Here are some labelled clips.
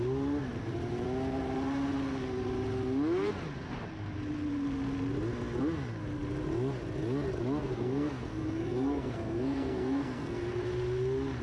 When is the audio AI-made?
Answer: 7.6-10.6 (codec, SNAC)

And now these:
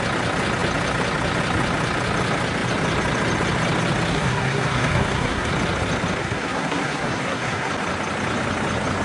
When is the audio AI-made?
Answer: 4.1-5.5 (codec, SNAC); 6.2-7.7

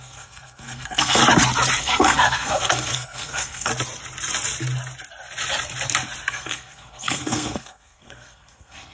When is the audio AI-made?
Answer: 0.0-1.2 (codec, SNAC); 1.8-3.7; 6.3-8.9

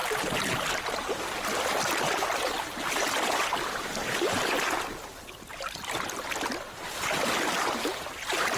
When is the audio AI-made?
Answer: none